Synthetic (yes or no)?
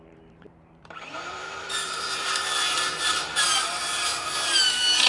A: yes